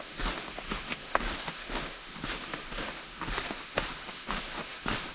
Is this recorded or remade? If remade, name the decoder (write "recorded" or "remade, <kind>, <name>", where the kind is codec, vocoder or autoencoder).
remade, autoencoder, DAC-VAE